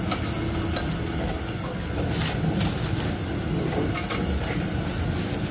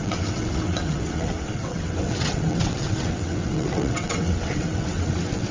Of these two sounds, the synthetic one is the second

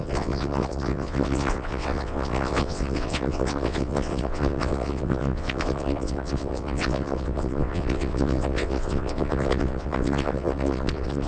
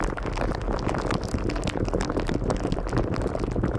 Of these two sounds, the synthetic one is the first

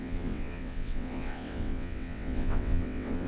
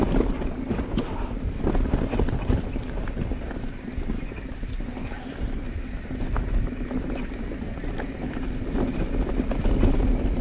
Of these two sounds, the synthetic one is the first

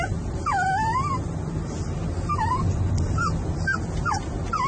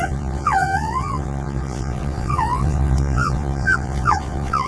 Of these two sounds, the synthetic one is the second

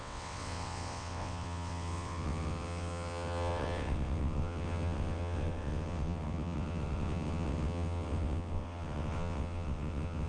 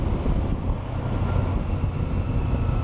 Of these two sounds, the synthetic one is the first